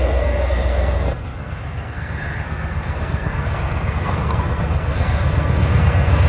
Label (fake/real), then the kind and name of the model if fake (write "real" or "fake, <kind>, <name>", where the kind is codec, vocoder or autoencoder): fake, codec, SNAC